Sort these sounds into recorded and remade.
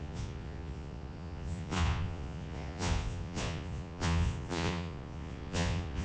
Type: remade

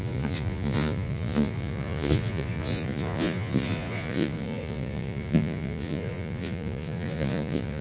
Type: remade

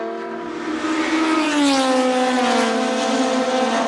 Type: recorded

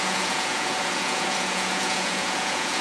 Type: remade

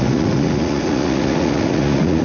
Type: remade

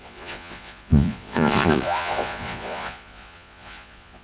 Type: remade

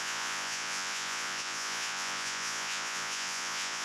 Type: remade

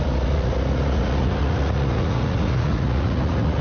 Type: remade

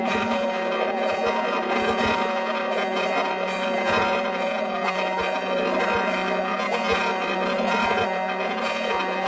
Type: remade